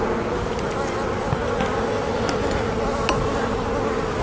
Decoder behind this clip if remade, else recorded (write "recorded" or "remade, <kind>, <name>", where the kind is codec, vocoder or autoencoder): recorded